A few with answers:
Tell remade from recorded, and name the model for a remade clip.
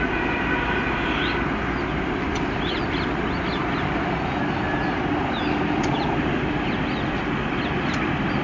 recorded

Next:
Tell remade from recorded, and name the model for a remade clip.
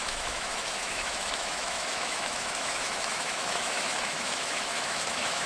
remade, autoencoder, DAC-VAE